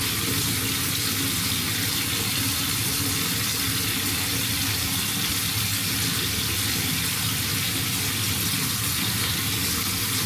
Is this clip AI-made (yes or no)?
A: no